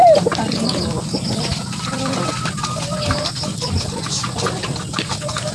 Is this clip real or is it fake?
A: real